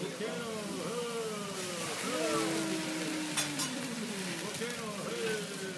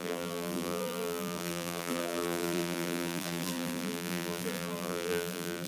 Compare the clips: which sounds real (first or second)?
first